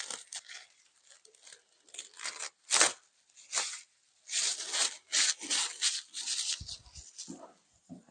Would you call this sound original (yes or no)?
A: yes